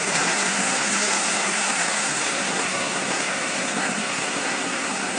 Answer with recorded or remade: remade